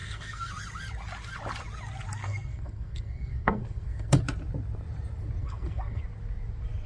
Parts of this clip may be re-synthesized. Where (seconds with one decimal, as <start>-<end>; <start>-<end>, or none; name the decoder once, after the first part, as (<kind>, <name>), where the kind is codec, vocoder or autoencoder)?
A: 0.0-0.5 (codec, SNAC); 2.2-4.2; 5.4-6.0